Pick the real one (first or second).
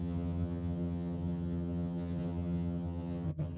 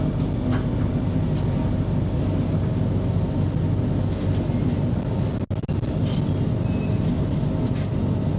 second